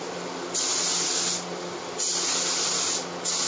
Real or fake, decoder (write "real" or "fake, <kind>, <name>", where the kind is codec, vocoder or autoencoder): real